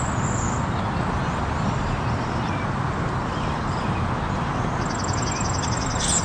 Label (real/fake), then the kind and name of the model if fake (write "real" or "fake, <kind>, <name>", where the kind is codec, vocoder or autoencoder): real